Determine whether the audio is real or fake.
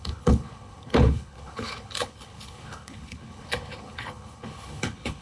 fake